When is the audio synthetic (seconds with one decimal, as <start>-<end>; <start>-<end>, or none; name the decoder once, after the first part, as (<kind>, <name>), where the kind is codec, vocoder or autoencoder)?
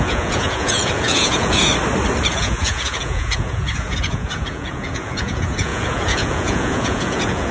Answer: 0.0-1.7 (vocoder, Vocos); 2.3-7.5